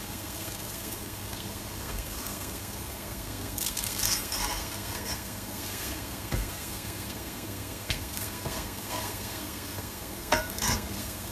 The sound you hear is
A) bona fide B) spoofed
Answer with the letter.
B